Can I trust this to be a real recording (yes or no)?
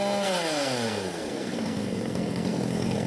no